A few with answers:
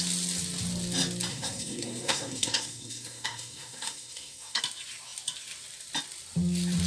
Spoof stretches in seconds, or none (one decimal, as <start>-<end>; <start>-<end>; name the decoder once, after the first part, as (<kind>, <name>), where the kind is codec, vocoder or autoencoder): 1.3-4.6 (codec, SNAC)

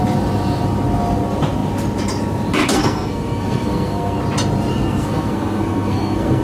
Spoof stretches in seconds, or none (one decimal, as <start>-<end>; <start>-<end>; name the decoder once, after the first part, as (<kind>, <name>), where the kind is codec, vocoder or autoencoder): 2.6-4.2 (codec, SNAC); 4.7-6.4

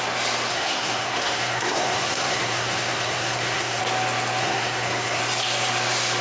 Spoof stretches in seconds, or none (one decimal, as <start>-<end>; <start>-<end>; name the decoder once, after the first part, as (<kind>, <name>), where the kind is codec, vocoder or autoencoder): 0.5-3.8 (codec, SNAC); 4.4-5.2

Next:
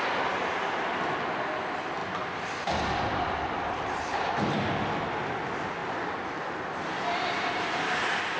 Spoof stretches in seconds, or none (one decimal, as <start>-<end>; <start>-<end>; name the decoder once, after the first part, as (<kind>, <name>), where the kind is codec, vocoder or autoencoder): none

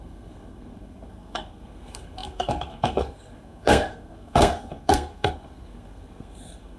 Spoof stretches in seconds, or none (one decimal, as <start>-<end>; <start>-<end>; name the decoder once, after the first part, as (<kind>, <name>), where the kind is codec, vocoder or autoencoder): 0.0-6.8 (codec, SNAC)

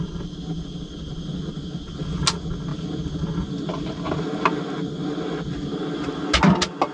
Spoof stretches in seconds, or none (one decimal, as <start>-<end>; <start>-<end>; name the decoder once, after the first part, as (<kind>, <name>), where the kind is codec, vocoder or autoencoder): none

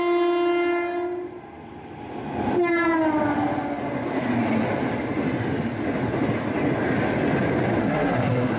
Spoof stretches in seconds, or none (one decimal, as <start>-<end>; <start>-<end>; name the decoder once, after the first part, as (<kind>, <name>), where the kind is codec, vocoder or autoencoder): 7.8-8.6 (codec, SNAC)

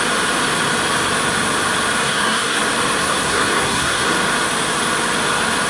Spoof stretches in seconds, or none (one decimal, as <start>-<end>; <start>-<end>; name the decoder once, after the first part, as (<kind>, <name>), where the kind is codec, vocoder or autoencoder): 2.0-2.6 (codec, SNAC); 3.0-4.1